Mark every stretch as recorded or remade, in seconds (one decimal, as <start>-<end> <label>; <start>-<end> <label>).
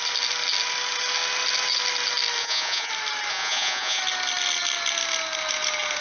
0.0-2.4 recorded; 2.4-2.9 remade; 2.9-3.3 recorded; 3.3-4.0 remade; 4.0-6.0 recorded